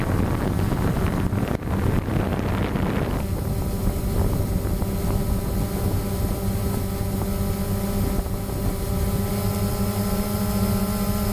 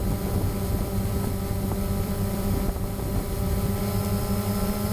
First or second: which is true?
first